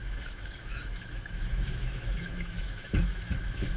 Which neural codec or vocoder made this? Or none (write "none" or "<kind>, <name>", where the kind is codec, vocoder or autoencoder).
autoencoder, DAC-VAE